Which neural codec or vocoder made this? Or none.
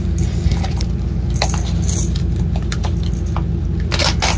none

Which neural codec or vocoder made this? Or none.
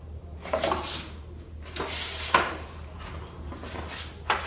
none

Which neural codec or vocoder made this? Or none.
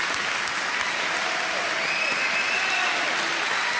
none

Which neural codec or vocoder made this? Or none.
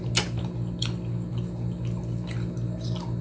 none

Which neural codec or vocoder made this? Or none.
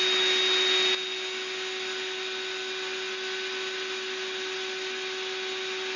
none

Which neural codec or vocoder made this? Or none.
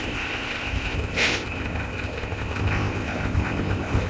codec, ZipCodec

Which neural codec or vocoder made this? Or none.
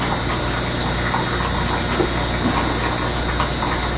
none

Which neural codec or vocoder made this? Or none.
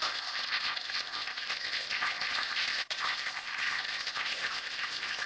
codec, ZipCodec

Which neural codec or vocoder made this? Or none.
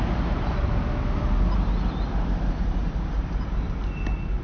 none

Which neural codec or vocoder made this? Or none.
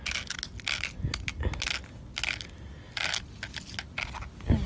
none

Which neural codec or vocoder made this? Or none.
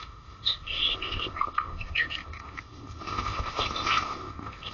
codec, ZipCodec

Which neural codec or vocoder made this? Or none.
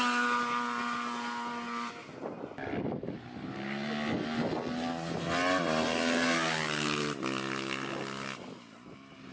none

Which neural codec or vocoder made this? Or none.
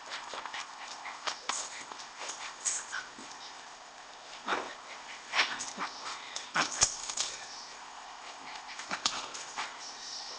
codec, ZipCodec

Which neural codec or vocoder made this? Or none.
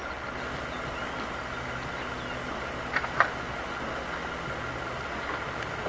none